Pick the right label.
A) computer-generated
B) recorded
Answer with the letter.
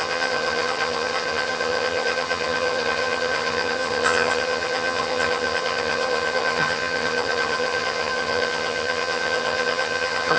A